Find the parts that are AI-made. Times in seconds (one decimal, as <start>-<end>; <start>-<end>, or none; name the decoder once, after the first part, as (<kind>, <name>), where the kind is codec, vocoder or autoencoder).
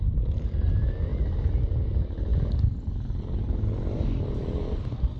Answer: none